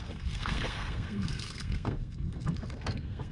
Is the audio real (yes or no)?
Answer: no